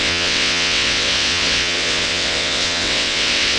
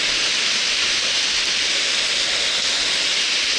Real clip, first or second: second